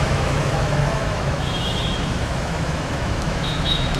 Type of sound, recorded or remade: remade